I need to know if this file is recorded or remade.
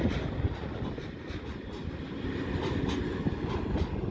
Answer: recorded